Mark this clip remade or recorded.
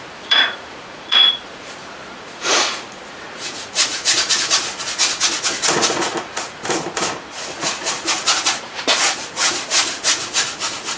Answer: remade